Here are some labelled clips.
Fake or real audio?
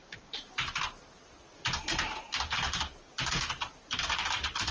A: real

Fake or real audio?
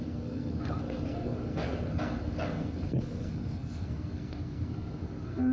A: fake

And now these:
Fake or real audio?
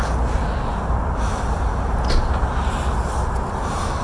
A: real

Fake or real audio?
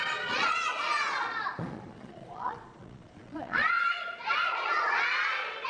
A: fake